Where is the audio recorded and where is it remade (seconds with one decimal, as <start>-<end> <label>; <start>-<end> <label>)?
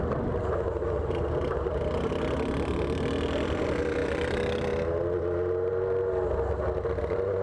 0.0-1.0 recorded; 1.0-2.1 remade; 2.1-7.4 recorded